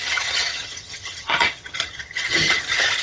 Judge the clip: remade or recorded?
remade